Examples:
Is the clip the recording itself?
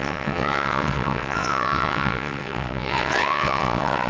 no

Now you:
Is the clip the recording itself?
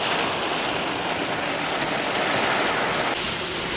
yes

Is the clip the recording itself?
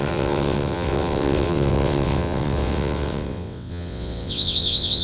no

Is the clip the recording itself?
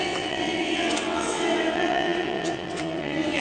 no